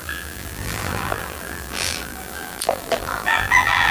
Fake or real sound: fake